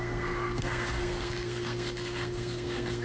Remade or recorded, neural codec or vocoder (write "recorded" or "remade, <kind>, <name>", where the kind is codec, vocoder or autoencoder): remade, codec, SNAC